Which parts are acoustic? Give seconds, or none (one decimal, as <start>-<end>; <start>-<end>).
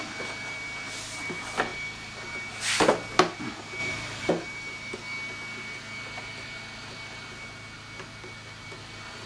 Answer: 0.0-3.8; 4.3-9.3